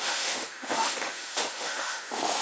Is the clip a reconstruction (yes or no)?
yes